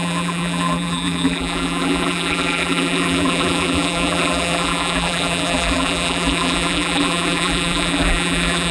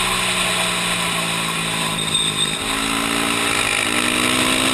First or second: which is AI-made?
first